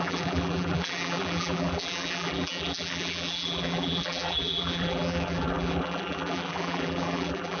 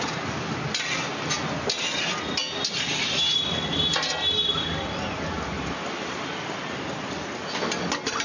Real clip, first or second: second